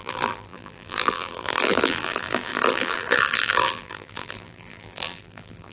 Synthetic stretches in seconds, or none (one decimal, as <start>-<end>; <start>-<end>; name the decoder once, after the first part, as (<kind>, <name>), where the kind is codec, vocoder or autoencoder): 0.0-5.7 (vocoder, BigVGAN v2)